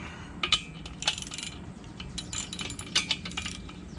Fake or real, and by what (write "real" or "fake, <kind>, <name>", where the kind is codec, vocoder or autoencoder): real